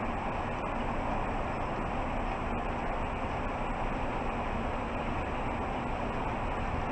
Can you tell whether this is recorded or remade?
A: recorded